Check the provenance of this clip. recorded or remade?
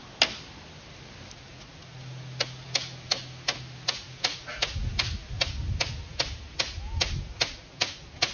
recorded